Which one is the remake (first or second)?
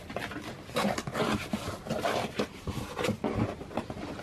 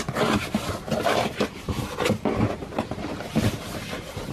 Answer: second